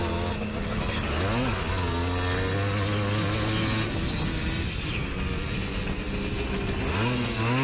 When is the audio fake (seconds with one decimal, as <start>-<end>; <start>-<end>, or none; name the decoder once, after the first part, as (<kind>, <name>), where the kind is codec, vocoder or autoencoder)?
none